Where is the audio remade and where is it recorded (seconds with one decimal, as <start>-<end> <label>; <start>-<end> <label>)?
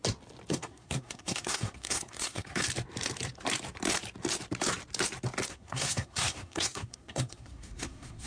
0.0-0.5 recorded; 0.5-2.6 remade; 2.6-5.5 recorded; 5.5-8.3 remade